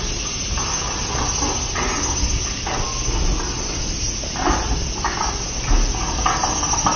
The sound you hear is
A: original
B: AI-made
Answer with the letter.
A